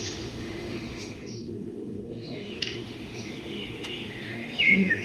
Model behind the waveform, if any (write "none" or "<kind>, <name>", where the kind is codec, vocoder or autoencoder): autoencoder, DAC-VAE